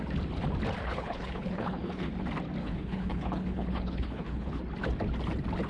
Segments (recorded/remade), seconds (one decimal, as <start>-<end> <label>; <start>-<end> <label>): 0.0-0.8 recorded; 0.8-2.1 remade; 2.1-2.6 recorded; 2.6-4.6 remade; 4.6-5.7 recorded

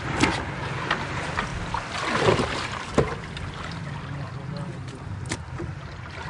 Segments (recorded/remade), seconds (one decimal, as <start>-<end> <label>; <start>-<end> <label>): 0.0-6.3 recorded

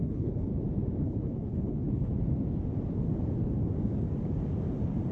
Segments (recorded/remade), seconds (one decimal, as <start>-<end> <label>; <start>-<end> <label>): 0.0-0.5 remade; 0.5-1.0 recorded; 1.0-2.1 remade; 2.1-5.1 recorded

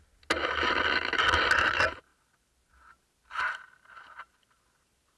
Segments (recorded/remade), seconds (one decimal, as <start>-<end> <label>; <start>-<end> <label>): 0.0-5.2 recorded

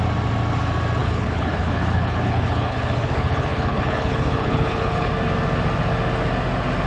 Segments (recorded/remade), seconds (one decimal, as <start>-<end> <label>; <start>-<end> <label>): 0.0-1.0 recorded; 1.0-5.1 remade; 5.1-6.9 recorded